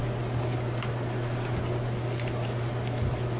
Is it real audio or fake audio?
real